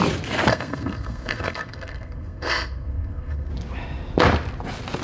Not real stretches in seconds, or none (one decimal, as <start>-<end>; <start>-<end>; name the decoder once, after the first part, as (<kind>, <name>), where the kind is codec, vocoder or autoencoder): 0.5-3.5 (codec, SNAC)